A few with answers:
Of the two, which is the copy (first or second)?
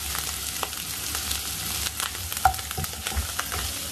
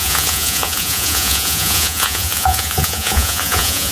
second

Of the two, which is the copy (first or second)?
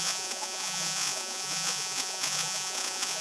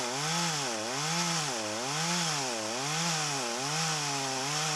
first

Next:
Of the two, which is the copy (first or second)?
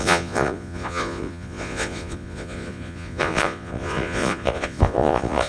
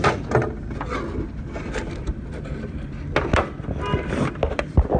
first